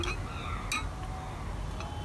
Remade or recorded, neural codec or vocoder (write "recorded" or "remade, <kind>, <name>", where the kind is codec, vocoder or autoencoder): recorded